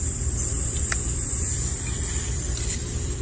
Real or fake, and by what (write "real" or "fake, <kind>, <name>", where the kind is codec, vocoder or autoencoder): fake, vocoder, BigVGAN v2